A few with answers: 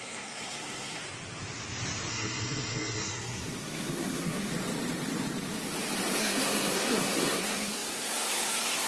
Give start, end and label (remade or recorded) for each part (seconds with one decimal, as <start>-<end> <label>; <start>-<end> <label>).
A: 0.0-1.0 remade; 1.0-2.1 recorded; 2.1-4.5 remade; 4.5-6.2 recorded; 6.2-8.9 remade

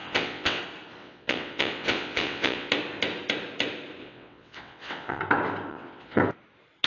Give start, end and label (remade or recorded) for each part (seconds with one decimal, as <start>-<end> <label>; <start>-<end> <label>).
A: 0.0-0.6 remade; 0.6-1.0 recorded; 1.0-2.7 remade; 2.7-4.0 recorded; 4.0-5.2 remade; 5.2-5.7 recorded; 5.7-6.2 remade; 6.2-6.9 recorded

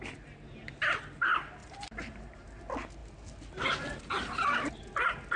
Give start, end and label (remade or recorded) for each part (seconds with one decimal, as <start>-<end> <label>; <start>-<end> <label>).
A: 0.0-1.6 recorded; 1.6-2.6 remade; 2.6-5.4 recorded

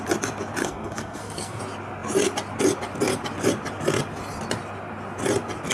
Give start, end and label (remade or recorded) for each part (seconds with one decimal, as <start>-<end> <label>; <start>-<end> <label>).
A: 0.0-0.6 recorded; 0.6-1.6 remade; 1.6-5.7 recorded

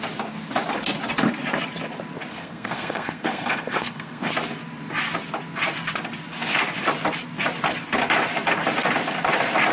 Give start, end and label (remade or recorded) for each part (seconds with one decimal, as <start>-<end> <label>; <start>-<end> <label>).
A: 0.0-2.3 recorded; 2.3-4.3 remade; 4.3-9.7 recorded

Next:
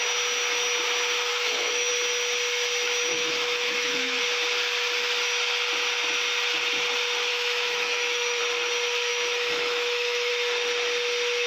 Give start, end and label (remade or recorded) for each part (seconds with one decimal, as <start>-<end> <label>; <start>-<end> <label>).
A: 0.0-1.3 recorded; 1.3-1.9 remade; 1.9-3.1 recorded; 3.1-4.2 remade; 4.2-7.3 recorded; 7.3-8.4 remade; 8.4-9.1 recorded; 9.1-10.3 remade; 10.3-11.5 recorded

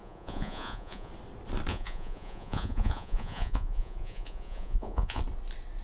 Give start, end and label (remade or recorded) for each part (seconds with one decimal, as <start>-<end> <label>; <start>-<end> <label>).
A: 0.0-1.1 remade; 1.1-1.7 recorded; 1.7-5.2 remade; 5.2-5.8 recorded